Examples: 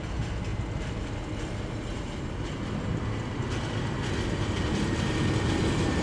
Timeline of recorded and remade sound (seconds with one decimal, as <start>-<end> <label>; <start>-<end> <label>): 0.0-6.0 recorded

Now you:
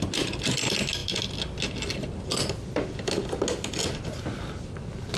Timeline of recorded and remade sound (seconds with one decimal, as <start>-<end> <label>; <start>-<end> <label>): 0.0-5.2 recorded

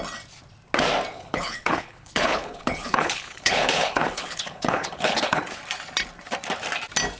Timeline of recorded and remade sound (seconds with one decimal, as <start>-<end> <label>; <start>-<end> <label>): 0.0-1.1 recorded; 1.1-5.4 remade; 5.4-7.2 recorded

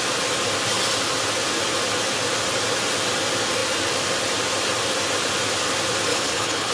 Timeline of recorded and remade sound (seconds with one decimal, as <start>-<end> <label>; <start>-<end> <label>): 0.0-6.1 recorded; 6.1-6.7 remade

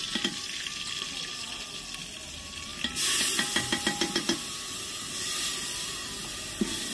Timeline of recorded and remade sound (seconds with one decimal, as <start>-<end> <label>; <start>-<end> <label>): 0.0-6.9 recorded

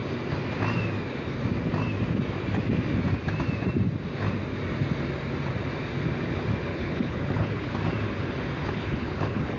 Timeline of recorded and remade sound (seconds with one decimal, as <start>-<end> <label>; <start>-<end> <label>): 0.0-6.7 recorded; 6.7-7.7 remade; 7.7-8.6 recorded; 8.6-9.6 remade

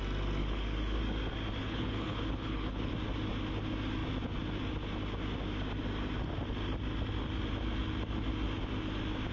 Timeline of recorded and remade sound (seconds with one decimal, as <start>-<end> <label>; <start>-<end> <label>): 0.0-0.4 recorded; 0.4-1.0 remade; 1.0-1.6 recorded; 1.6-2.9 remade; 2.9-9.3 recorded